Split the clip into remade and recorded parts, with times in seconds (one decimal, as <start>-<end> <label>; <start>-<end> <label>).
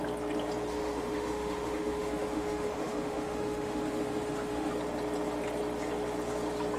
0.0-0.7 recorded; 0.7-4.7 remade; 4.7-6.8 recorded